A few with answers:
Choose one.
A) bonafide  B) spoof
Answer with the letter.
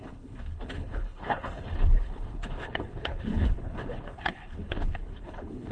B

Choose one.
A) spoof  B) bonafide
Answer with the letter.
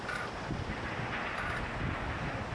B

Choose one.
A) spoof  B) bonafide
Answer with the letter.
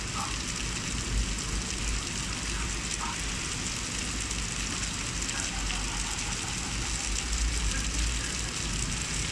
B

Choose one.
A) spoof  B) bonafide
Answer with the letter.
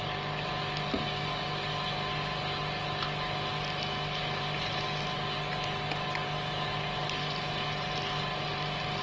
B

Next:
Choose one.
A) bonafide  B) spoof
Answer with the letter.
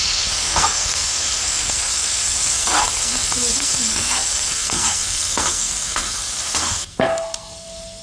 B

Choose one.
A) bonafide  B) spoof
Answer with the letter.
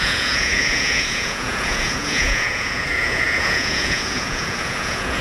B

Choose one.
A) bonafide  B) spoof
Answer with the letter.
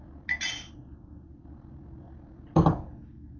A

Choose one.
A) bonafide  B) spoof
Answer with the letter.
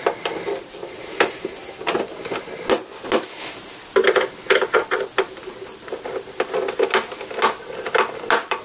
A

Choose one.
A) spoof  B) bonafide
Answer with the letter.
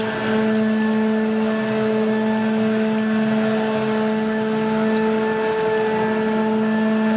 B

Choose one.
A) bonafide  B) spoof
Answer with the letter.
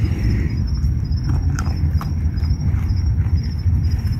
B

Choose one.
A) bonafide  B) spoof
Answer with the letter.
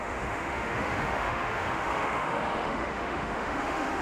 B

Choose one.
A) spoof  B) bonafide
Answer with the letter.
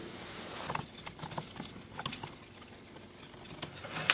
B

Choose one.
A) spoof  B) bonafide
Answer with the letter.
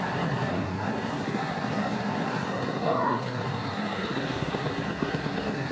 A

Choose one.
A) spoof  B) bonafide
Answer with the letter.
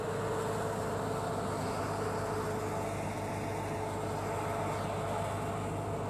B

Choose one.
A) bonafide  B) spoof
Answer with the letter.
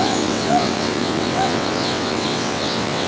B